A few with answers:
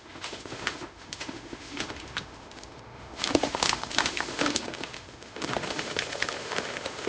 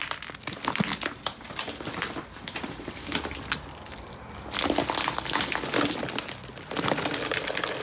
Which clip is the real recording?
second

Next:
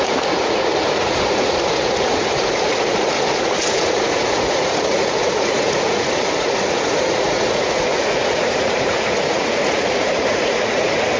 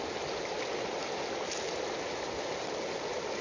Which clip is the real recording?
second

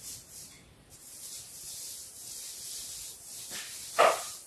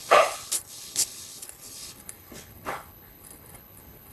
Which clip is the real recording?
first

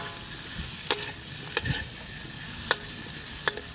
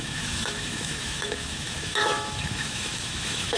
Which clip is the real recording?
first